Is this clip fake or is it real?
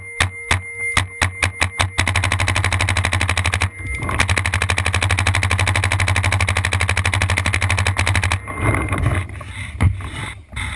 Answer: real